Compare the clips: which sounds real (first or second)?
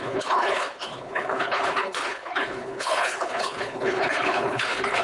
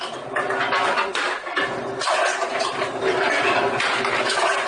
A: second